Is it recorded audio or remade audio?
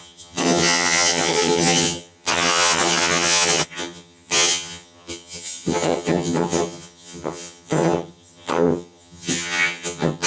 remade